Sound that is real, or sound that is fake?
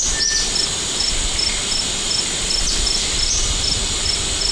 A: real